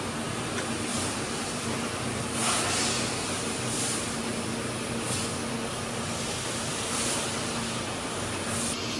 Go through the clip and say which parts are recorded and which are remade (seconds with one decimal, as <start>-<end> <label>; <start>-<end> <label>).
0.0-0.9 recorded; 0.9-2.2 remade; 2.2-9.0 recorded